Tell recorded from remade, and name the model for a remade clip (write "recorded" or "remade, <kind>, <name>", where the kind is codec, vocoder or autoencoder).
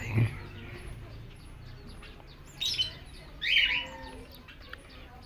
recorded